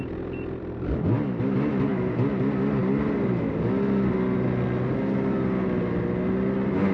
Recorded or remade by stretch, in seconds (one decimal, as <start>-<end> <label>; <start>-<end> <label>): 0.0-6.9 recorded